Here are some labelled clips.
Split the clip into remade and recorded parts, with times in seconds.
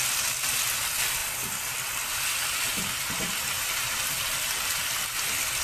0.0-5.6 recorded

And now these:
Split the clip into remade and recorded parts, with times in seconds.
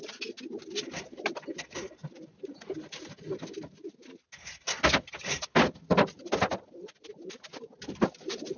0.0-8.6 recorded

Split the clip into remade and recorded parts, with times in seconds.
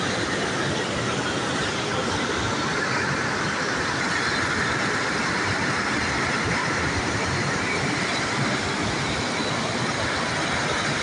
0.0-2.0 recorded; 2.0-4.1 remade; 4.1-6.6 recorded; 6.6-8.8 remade; 8.8-11.0 recorded